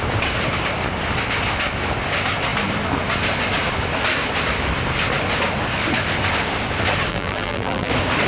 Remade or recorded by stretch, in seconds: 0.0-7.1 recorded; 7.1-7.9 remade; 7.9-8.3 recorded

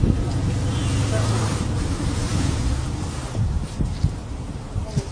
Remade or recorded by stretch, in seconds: 0.0-0.8 remade; 0.8-1.4 recorded; 1.4-5.1 remade

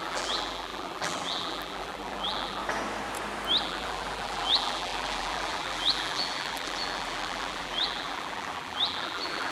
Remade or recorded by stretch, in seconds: 0.0-2.6 remade; 2.6-3.6 recorded; 3.6-9.5 remade

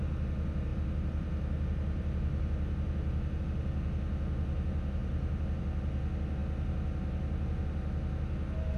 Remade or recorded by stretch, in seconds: 0.0-0.7 recorded; 0.7-3.4 remade; 3.4-5.0 recorded; 5.0-5.6 remade; 5.6-8.8 recorded

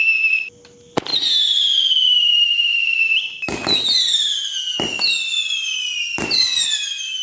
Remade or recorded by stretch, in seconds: 0.0-1.1 recorded; 1.1-2.3 remade; 2.3-5.3 recorded; 5.3-6.6 remade; 6.6-7.2 recorded

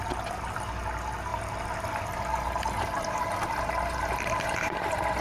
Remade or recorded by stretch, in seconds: 0.0-5.2 recorded

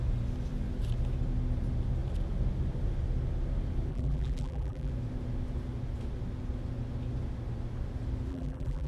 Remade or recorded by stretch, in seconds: 0.0-3.9 recorded; 3.9-4.9 remade; 4.9-8.3 recorded; 8.3-8.9 remade